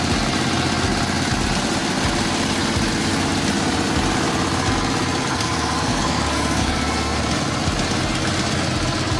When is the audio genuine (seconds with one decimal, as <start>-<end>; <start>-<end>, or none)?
0.0-5.3; 7.2-9.2